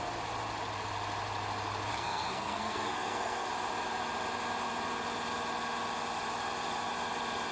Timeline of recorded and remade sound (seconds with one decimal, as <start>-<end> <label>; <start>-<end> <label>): 0.0-1.9 recorded; 1.9-3.5 remade; 3.5-7.5 recorded